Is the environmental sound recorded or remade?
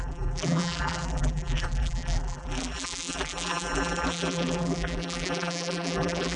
remade